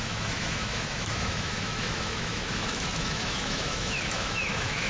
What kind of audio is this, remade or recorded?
remade